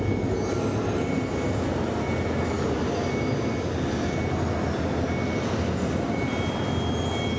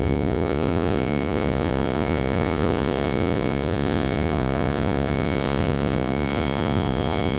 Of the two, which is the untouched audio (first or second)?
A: first